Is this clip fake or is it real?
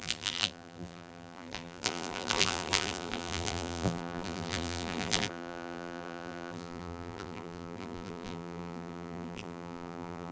fake